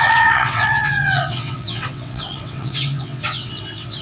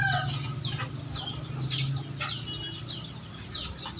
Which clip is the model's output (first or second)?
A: first